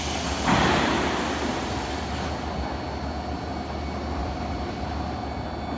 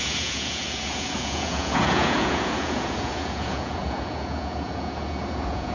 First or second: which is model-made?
second